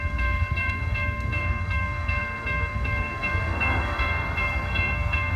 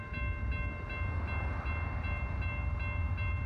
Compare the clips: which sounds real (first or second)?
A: second